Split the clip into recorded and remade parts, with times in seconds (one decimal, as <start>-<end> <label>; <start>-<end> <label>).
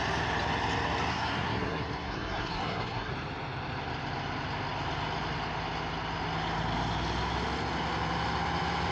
0.0-1.1 recorded; 1.1-3.1 remade; 3.1-8.9 recorded